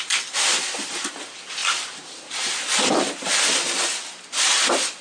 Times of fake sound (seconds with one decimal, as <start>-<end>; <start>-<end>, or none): 1.6-3.4